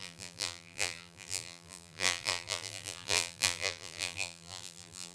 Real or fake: fake